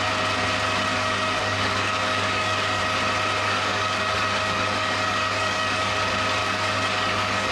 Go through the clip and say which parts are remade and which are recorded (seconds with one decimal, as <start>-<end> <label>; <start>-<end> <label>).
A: 0.0-0.9 recorded; 0.9-2.8 remade; 2.8-3.4 recorded; 3.4-5.9 remade; 5.9-6.4 recorded; 6.4-7.5 remade